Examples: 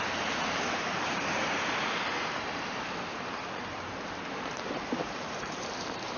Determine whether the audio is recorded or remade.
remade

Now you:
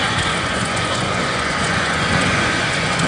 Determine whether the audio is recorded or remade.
remade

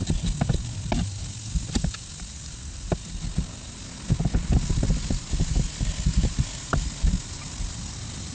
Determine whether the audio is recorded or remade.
recorded